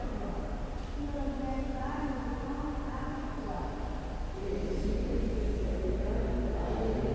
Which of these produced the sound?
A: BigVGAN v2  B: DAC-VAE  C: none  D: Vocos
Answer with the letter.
C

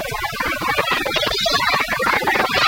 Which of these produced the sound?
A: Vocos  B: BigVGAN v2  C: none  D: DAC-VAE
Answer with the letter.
A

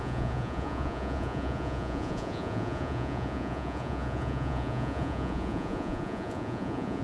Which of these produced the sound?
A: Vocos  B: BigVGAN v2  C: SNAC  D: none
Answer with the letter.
A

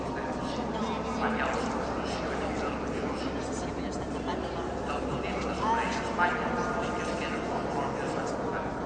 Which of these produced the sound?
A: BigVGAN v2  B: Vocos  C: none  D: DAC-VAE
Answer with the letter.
C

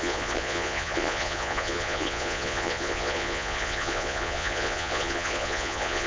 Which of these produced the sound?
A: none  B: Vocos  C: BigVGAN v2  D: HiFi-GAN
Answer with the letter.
B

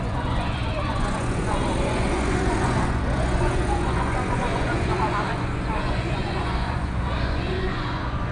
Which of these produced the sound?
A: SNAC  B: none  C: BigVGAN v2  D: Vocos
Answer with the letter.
D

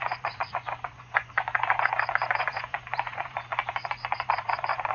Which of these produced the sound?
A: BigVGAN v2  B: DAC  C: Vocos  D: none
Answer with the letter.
C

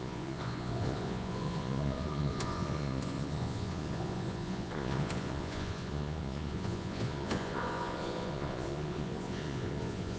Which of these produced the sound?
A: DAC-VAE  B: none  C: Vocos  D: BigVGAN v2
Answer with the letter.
C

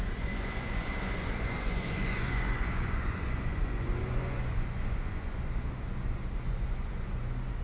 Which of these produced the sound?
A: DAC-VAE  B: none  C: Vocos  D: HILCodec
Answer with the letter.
C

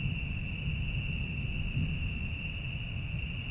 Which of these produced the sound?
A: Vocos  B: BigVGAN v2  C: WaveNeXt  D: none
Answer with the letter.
D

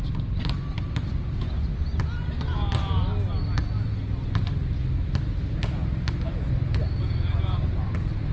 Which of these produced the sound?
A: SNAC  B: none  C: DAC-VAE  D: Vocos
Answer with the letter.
B